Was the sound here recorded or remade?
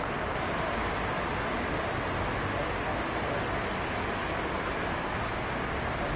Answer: recorded